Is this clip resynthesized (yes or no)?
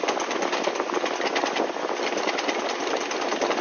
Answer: no